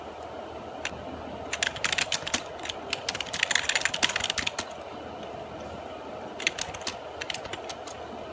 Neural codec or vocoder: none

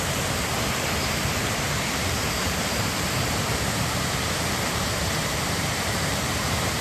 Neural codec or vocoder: vocoder, BigVGAN v2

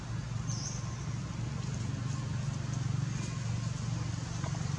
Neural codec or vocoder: none